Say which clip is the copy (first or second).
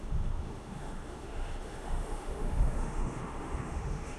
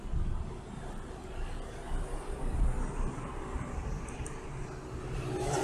first